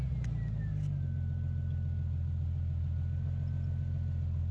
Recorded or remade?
recorded